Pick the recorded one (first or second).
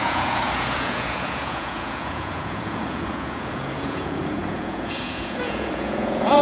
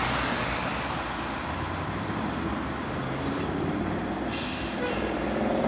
second